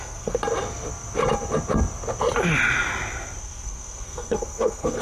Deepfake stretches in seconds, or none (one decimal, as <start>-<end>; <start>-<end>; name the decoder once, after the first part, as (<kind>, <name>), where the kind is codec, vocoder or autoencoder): 0.0-0.4 (codec, SNAC); 3.4-5.0